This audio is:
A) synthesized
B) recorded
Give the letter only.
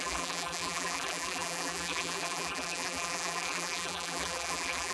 A